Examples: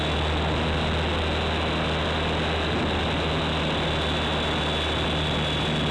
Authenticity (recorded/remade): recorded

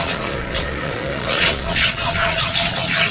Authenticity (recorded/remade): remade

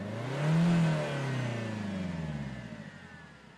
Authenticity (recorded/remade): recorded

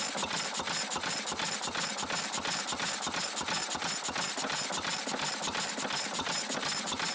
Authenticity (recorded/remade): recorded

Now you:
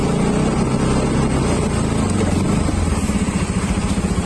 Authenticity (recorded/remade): recorded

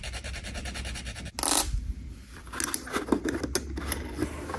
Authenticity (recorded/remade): recorded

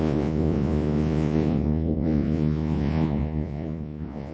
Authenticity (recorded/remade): remade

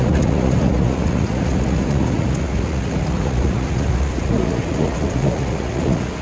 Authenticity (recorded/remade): remade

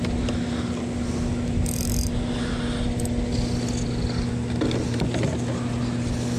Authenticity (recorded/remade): recorded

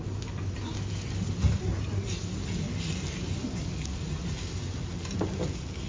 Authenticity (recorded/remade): recorded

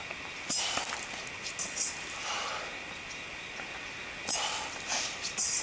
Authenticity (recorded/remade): recorded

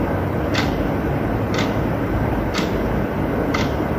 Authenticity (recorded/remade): recorded